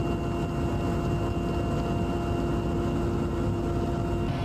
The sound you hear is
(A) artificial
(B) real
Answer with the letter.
B